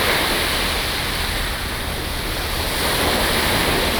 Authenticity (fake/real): real